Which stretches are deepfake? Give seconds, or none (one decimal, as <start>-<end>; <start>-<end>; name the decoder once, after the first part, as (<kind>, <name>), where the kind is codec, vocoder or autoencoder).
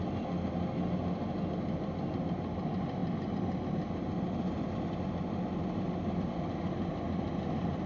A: none